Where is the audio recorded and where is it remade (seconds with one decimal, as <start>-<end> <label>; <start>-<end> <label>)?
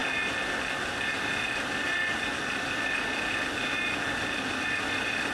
0.0-1.4 recorded; 1.4-2.0 remade; 2.0-4.6 recorded; 4.6-5.3 remade